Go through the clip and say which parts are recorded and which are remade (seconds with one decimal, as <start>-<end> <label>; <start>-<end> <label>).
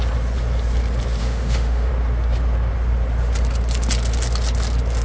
0.0-1.2 recorded; 1.2-1.9 remade; 1.9-5.0 recorded